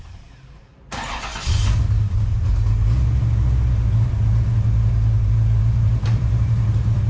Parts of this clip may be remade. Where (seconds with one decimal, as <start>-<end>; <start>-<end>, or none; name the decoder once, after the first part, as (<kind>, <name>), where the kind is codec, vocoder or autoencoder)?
0.0-1.3 (vocoder, BigVGAN v2); 5.6-7.1